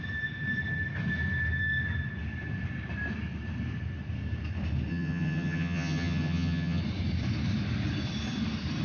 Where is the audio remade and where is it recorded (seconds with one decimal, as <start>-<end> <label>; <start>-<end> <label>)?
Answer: 0.0-4.9 recorded; 4.9-6.8 remade; 6.8-8.8 recorded

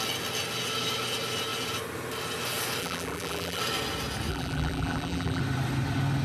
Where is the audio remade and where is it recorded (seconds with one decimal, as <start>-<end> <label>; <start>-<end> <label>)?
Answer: 0.0-2.8 recorded; 2.8-3.6 remade; 3.6-4.3 recorded; 4.3-5.4 remade; 5.4-6.2 recorded